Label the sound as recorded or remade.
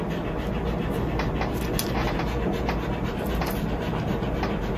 recorded